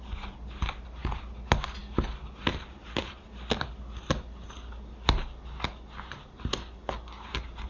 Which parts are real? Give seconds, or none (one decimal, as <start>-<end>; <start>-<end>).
0.0-7.7